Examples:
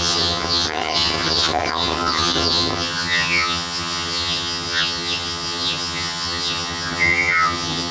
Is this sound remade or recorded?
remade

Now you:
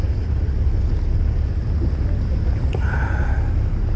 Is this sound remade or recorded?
recorded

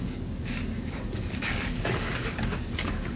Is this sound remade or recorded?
remade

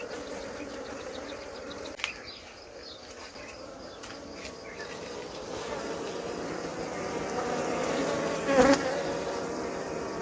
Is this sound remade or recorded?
recorded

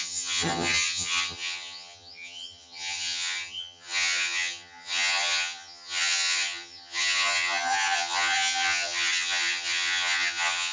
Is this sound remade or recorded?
remade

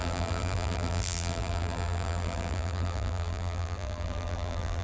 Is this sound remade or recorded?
remade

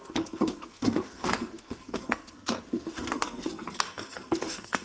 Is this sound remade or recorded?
remade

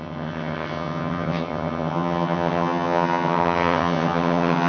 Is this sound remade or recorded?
remade